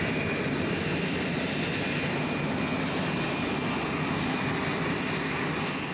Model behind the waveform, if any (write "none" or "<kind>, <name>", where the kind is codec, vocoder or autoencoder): none